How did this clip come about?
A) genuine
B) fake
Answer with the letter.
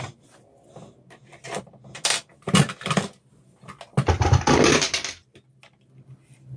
A